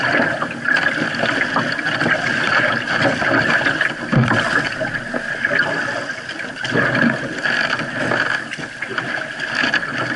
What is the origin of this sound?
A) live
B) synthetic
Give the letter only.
A